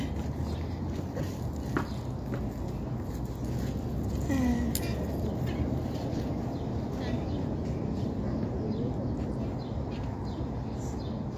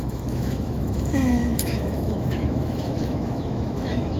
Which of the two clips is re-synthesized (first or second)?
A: second